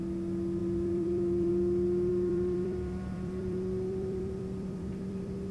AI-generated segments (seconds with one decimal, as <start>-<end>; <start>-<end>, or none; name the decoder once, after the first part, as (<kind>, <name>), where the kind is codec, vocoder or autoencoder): 0.6-1.5 (vocoder, BigVGAN v2); 2.1-5.5